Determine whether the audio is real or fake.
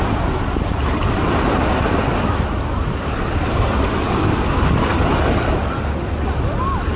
real